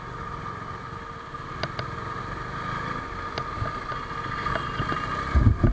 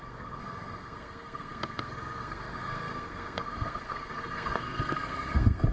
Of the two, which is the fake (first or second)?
second